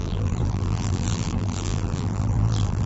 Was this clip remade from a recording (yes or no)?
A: yes